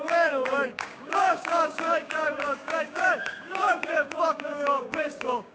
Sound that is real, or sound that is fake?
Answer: fake